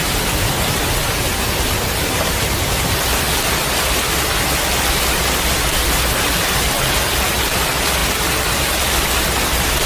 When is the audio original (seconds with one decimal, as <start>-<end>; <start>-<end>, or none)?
0.0-9.9